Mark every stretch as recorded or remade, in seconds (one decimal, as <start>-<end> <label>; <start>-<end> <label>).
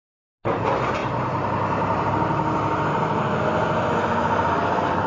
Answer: 0.0-5.1 recorded